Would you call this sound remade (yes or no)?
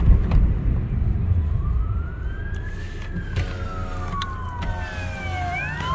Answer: no